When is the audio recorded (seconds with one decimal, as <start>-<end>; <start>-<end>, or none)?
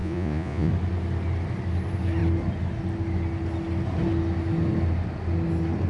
0.7-5.9